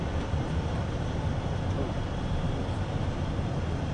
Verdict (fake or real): real